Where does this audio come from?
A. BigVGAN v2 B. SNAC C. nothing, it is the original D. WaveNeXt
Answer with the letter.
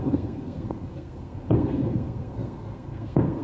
B